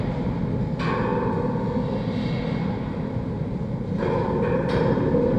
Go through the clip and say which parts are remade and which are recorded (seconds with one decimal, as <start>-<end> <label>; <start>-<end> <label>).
0.0-5.4 recorded